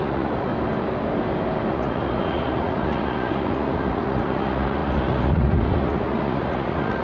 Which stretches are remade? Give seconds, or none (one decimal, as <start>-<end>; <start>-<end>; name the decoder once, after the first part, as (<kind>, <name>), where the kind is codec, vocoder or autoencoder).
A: 0.0-0.5 (vocoder, Vocos); 1.7-7.0